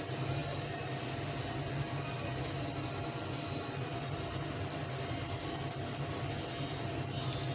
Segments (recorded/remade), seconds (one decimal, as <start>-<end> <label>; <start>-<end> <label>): 0.0-7.5 recorded